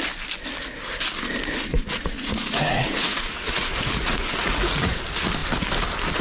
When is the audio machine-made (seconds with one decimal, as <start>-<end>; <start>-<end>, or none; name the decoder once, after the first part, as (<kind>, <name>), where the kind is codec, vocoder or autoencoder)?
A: 1.7-4.9 (vocoder, Vocos)